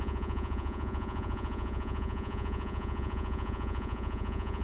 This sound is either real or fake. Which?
fake